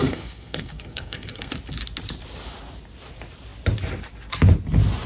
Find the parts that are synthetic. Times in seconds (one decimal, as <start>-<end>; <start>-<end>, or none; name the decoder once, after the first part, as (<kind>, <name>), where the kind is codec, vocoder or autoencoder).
0.0-1.5 (codec, SNAC)